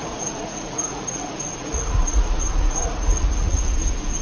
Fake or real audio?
fake